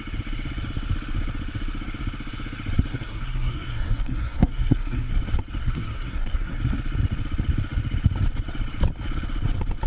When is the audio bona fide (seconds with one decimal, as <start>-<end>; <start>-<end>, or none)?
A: 0.0-2.9; 5.1-5.6; 6.6-9.9